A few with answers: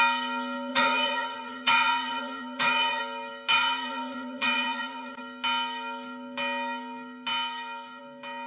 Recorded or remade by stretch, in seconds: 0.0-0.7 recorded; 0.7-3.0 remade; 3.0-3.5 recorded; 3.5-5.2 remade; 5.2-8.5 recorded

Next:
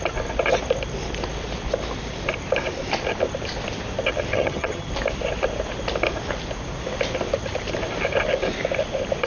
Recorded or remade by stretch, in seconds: 0.0-4.3 recorded; 4.3-4.9 remade; 4.9-9.3 recorded

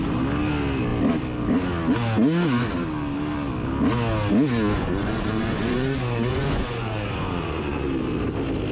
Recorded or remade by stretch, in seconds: 0.0-4.8 recorded; 4.8-7.9 remade; 7.9-8.7 recorded

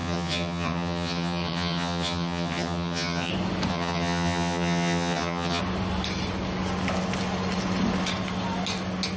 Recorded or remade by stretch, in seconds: 0.0-3.3 remade; 3.3-3.7 recorded; 3.7-5.6 remade; 5.6-9.2 recorded

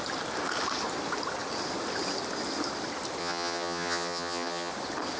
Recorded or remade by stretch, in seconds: 0.0-3.2 recorded; 3.2-4.7 remade; 4.7-5.2 recorded

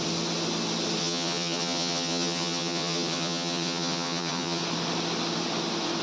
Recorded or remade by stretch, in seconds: 0.0-1.0 recorded; 1.0-4.6 remade; 4.6-6.0 recorded